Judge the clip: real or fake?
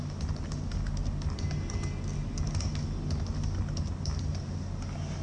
real